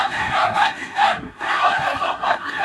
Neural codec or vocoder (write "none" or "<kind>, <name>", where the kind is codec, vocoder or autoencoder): codec, SNAC